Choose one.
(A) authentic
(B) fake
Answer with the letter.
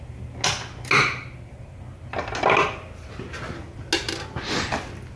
A